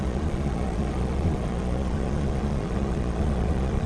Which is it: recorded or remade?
remade